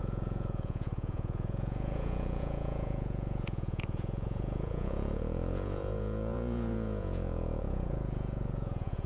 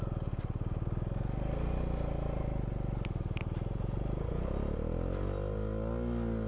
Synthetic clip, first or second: first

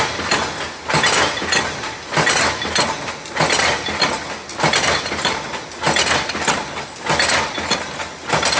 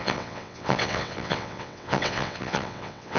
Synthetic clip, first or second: second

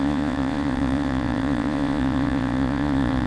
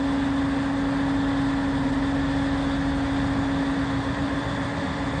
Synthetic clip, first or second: first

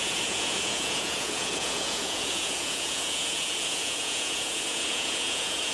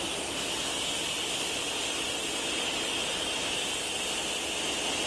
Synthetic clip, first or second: first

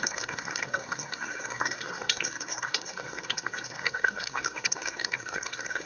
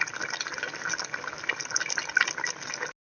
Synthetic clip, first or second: first